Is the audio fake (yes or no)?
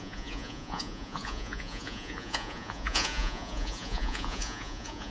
yes